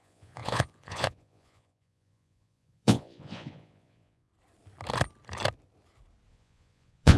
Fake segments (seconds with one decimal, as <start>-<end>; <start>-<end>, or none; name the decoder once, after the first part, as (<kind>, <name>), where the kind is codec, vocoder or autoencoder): 0.0-4.3 (vocoder, Vocos); 6.3-7.2